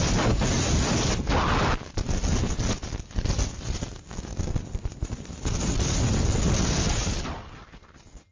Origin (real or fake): real